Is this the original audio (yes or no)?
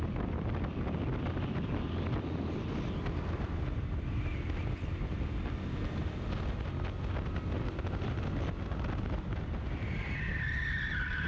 yes